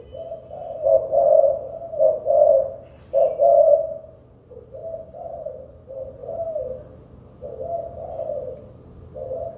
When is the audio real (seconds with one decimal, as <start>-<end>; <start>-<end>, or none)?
0.0-9.6